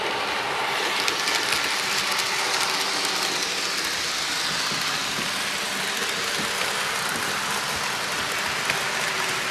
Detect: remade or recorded recorded